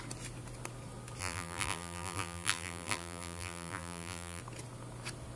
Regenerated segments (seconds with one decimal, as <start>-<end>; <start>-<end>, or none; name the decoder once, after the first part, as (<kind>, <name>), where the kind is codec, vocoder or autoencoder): 1.2-4.4 (vocoder, BigVGAN v2)